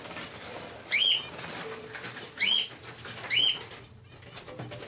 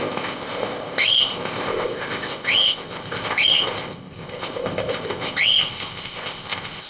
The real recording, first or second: first